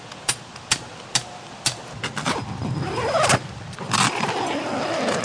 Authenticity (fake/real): real